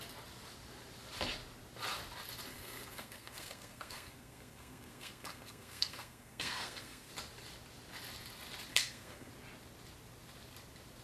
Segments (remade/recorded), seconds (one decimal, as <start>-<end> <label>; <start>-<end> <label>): 0.0-2.5 recorded; 2.5-7.1 remade; 7.1-8.7 recorded; 8.7-9.3 remade; 9.3-11.0 recorded